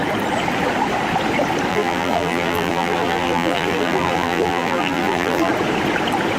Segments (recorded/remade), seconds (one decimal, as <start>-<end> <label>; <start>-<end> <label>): 0.0-1.7 recorded; 1.7-5.5 remade; 5.5-6.4 recorded